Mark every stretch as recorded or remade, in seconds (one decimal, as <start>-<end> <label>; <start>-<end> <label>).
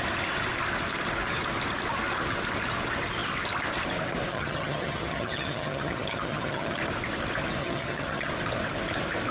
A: 0.0-4.3 recorded; 4.3-6.8 remade; 6.8-7.6 recorded; 7.6-8.3 remade; 8.3-9.3 recorded